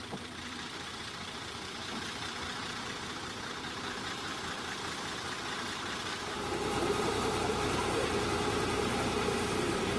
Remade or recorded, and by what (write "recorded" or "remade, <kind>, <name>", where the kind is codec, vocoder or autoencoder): remade, vocoder, BigVGAN v2